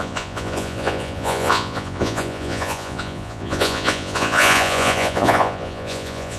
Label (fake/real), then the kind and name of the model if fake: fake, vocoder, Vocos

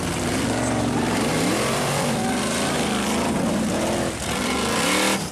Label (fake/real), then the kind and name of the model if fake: fake, vocoder, BigVGAN v2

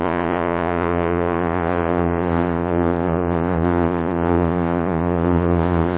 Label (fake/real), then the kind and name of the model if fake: fake, vocoder, Vocos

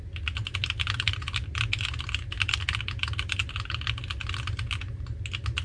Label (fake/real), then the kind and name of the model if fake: real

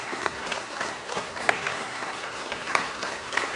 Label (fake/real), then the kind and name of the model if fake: fake, codec, SNAC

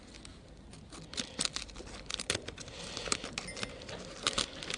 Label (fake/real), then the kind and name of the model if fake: real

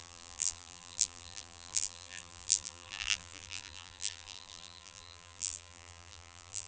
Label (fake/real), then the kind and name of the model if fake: fake, vocoder, BigVGAN v2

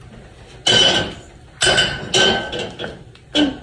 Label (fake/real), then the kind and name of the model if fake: real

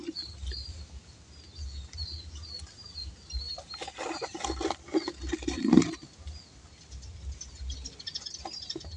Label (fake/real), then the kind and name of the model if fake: real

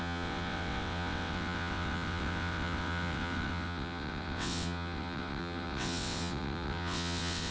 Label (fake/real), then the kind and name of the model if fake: fake, vocoder, WaveNeXt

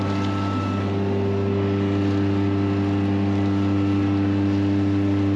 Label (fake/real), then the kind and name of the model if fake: real